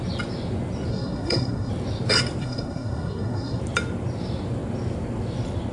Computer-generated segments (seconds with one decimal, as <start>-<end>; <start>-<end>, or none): 0.9-1.7; 2.4-3.6